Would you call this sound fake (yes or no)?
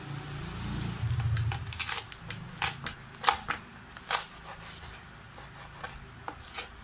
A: no